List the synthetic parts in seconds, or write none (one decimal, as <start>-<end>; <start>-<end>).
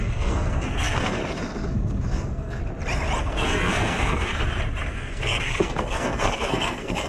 0.0-1.2; 1.7-2.6; 3.2-4.3; 4.9-7.1